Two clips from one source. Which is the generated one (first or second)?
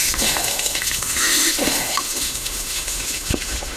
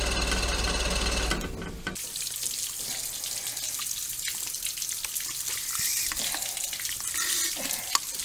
first